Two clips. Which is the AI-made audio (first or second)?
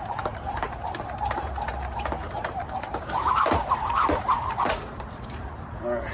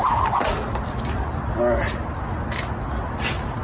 first